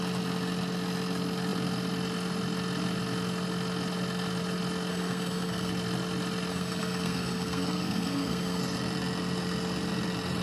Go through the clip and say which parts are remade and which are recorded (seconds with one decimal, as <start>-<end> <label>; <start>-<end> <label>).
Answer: 0.0-4.9 recorded; 4.9-5.7 remade; 5.7-6.5 recorded; 6.5-8.6 remade; 8.6-10.4 recorded